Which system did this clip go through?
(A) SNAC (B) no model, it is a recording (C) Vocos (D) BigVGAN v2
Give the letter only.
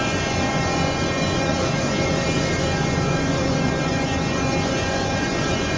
C